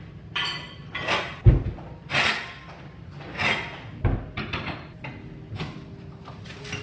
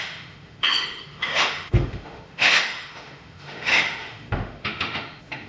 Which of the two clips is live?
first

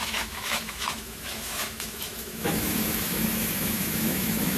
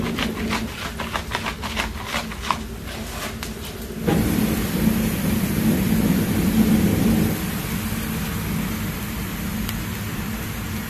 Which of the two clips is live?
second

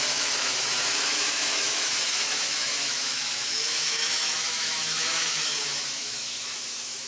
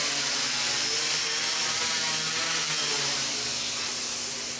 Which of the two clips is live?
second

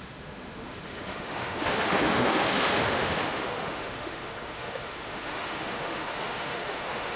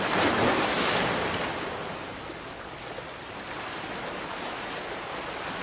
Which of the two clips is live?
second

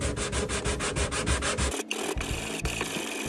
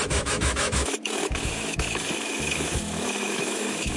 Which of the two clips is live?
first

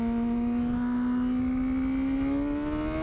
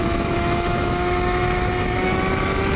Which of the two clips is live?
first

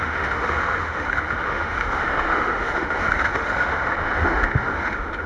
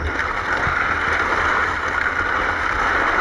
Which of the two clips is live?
second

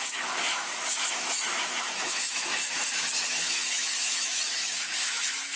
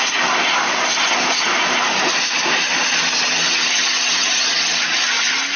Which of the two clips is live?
second